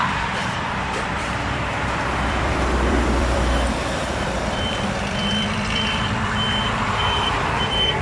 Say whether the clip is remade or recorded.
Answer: remade